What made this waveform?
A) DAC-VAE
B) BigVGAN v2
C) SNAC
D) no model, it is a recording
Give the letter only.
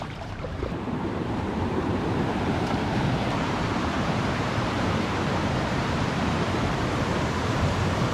B